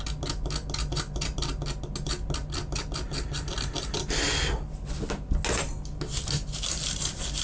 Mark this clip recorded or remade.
recorded